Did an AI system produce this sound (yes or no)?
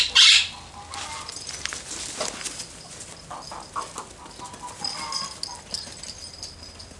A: no